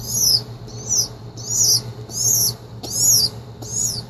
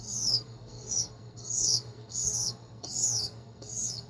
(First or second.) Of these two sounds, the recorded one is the first